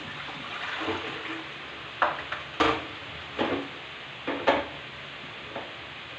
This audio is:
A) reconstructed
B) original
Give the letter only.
B